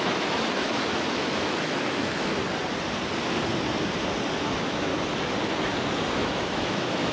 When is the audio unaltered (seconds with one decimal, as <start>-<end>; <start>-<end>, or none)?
2.4-4.3; 4.9-6.1